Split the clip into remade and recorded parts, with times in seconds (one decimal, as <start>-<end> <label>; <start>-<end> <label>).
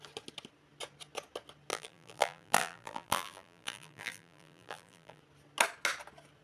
0.0-1.7 recorded; 1.7-5.2 remade; 5.2-6.4 recorded